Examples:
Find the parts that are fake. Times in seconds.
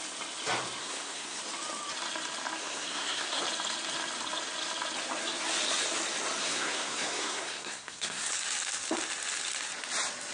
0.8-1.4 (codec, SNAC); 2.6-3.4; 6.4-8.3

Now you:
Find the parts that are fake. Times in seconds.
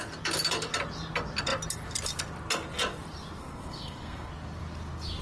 3.4-4.3 (codec, SNAC)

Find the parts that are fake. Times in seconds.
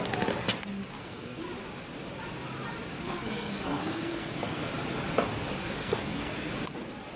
0.9-1.4 (codec, SNAC); 2.9-4.7; 5.6-6.5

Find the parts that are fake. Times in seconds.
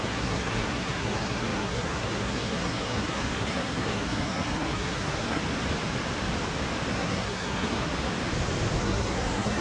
0.0-5.4 (codec, SNAC); 6.9-7.9; 8.8-9.6